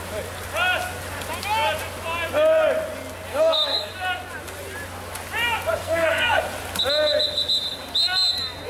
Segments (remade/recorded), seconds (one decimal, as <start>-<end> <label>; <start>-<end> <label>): 0.0-3.3 recorded; 3.3-3.9 remade; 3.9-5.8 recorded; 5.8-6.4 remade; 6.4-8.7 recorded